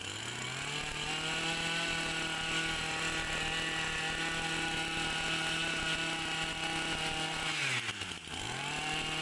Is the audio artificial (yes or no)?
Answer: no